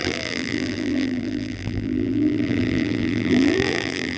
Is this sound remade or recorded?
remade